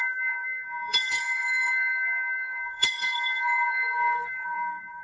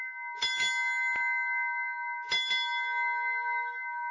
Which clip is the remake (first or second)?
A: first